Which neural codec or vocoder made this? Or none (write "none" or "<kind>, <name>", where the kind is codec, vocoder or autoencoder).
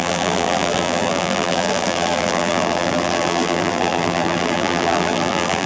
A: vocoder, BigVGAN v2